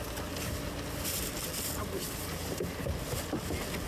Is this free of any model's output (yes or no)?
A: yes